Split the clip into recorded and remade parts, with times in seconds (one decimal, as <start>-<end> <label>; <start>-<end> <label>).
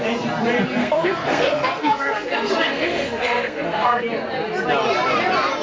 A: 0.0-0.8 recorded; 0.8-4.0 remade; 4.0-5.6 recorded